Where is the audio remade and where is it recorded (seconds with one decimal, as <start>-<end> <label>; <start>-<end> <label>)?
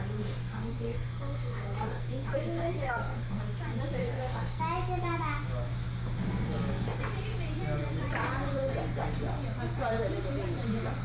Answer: 0.0-0.4 recorded; 0.4-3.4 remade; 3.4-4.0 recorded; 4.0-4.6 remade; 4.6-11.0 recorded